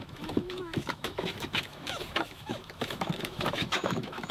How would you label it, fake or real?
fake